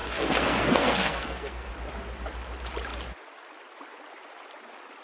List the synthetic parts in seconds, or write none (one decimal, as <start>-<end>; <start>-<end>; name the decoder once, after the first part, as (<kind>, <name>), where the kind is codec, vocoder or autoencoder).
0.0-1.7 (codec, SNAC)